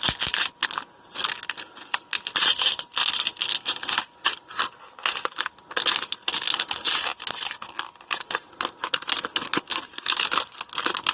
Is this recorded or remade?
recorded